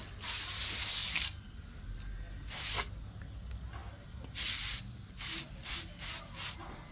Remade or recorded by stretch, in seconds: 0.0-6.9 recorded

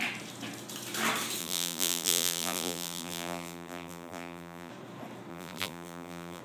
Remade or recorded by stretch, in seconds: 0.0-1.4 recorded; 1.4-4.7 remade; 4.7-5.3 recorded; 5.3-6.4 remade

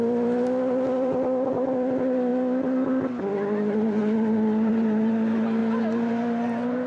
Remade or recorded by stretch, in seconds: 0.0-2.3 remade; 2.3-3.2 recorded; 3.2-5.6 remade; 5.6-6.9 recorded

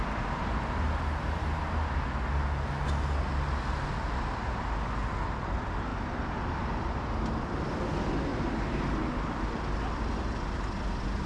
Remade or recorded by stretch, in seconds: 0.0-11.3 recorded

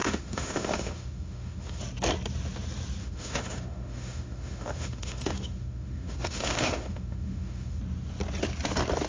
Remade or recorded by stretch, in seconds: 0.0-1.8 remade; 1.8-3.0 recorded; 3.0-7.8 remade; 7.8-9.1 recorded